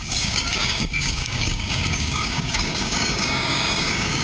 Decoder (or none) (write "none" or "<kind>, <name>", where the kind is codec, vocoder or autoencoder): codec, DAC